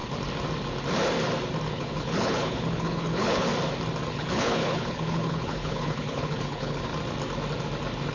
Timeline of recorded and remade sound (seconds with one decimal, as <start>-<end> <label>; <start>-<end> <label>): 0.0-1.7 recorded; 1.7-3.5 remade; 3.5-4.1 recorded; 4.1-6.9 remade; 6.9-8.1 recorded